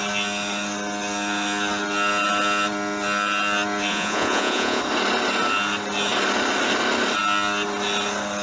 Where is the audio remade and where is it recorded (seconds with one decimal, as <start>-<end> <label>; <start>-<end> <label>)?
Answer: 0.0-3.9 recorded; 3.9-4.8 remade; 4.8-8.4 recorded